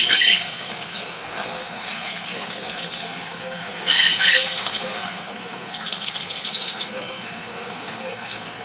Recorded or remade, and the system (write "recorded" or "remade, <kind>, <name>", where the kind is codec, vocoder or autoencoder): remade, codec, SNAC